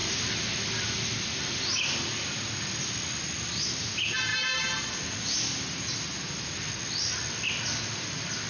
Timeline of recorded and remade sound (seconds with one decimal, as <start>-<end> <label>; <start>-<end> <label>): 0.0-8.5 recorded